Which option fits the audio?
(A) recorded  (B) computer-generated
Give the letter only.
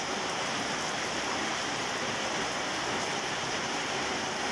B